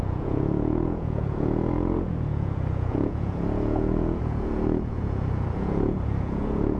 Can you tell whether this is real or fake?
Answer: fake